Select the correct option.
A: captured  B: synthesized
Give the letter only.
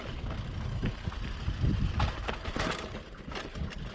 A